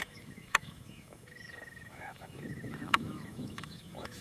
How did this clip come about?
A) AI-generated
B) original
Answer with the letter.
A